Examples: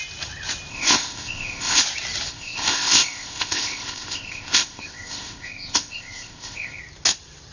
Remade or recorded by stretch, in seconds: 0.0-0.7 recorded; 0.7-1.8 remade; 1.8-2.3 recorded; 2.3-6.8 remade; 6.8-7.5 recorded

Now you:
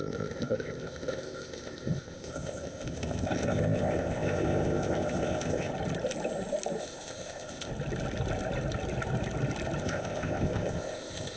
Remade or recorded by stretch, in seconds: 0.0-5.7 remade; 5.7-6.8 recorded; 6.8-7.7 remade; 7.7-9.8 recorded; 9.8-11.4 remade

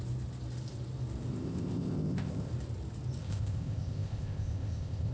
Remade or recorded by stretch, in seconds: 0.0-1.4 recorded; 1.4-2.5 remade; 2.5-3.2 recorded; 3.2-5.1 remade

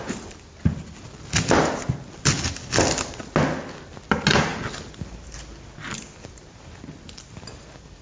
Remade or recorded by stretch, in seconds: 0.0-8.0 recorded

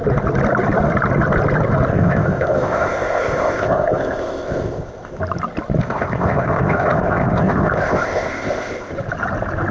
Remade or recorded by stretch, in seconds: 0.0-1.9 recorded; 1.9-5.2 remade; 5.2-5.8 recorded; 5.8-8.9 remade; 8.9-9.7 recorded

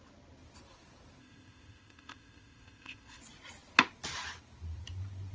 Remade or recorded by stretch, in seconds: 0.0-1.2 recorded; 1.2-3.2 remade; 3.2-5.3 recorded

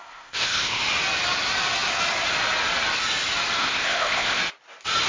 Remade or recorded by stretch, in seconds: 0.0-0.8 remade; 0.8-3.6 recorded; 3.6-4.4 remade; 4.4-5.1 recorded